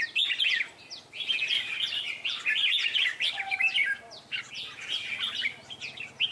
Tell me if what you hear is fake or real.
real